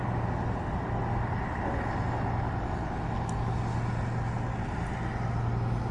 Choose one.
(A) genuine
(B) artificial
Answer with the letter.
A